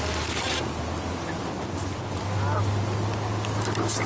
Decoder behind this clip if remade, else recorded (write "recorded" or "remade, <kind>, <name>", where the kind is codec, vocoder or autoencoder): recorded